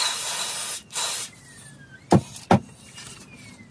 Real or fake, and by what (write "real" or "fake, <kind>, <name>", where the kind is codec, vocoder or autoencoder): real